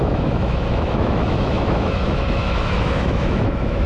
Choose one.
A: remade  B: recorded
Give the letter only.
A